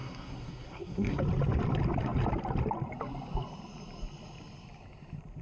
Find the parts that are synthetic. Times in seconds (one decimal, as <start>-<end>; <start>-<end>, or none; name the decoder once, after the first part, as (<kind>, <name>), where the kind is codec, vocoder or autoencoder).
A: 0.0-1.2 (codec, SNAC)